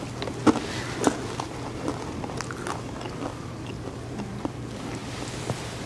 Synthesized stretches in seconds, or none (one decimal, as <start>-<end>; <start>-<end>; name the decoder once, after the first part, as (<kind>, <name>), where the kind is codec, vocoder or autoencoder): none